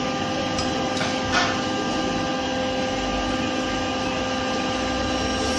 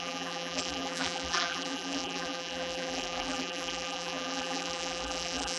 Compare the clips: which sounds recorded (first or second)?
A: first